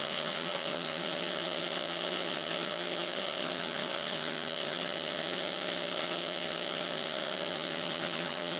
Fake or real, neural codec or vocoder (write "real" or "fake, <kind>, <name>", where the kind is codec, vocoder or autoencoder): fake, vocoder, HiFi-GAN